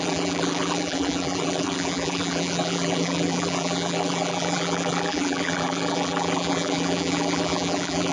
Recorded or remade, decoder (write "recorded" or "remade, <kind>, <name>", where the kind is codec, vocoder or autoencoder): remade, vocoder, BigVGAN v2